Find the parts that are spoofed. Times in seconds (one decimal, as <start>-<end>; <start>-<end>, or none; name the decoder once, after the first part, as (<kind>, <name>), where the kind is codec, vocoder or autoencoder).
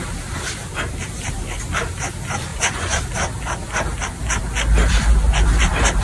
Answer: 2.5-3.1 (vocoder, Vocos)